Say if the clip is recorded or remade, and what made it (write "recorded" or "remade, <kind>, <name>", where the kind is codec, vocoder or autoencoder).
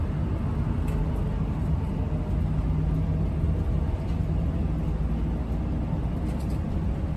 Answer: recorded